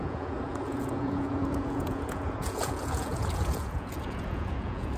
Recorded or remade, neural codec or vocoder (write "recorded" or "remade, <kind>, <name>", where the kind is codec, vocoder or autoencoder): remade, vocoder, Vocos